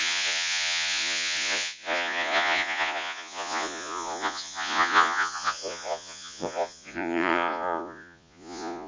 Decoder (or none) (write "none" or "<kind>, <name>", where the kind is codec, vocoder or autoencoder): vocoder, Vocos